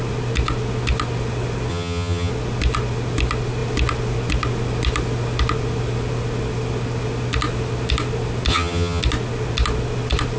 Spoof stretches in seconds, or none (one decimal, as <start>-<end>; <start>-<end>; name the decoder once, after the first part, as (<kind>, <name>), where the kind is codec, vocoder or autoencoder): 1.7-2.3 (vocoder, HiFi-GAN); 8.5-9.0